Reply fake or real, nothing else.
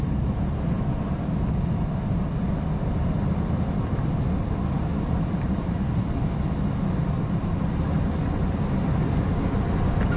real